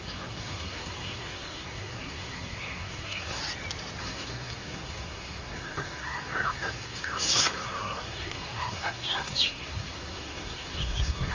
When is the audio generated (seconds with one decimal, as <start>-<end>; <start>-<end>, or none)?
0.0-3.4; 4.0-11.3